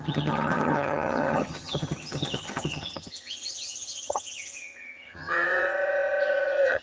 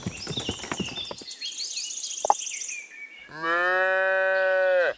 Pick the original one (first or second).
second